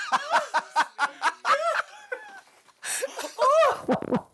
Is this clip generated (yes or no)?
no